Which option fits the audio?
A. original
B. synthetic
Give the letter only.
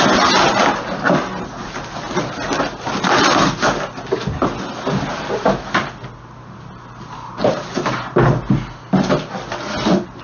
A